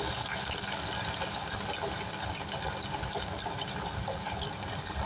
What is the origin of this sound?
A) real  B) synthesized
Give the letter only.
A